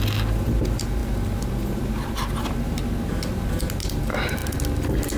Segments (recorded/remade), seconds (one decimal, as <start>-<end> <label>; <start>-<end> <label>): 0.0-5.2 recorded